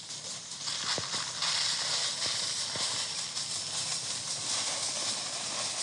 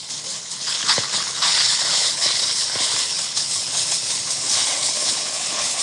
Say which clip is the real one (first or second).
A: first